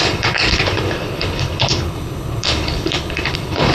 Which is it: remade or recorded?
remade